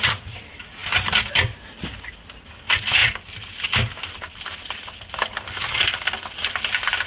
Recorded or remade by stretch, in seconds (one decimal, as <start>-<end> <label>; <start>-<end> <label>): 0.0-7.1 recorded